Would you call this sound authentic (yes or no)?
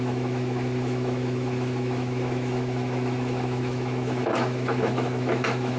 no